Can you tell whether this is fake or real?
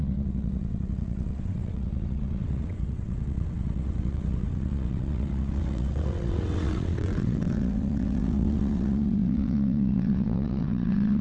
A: fake